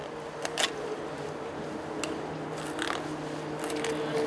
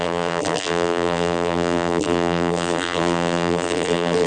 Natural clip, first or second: first